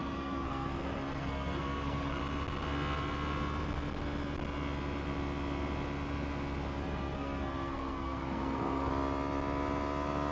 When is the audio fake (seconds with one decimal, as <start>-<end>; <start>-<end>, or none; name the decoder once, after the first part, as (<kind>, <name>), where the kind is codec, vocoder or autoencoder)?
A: 0.0-2.2 (codec, SNAC); 6.8-8.9